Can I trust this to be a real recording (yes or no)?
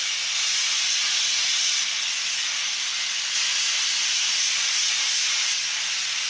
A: yes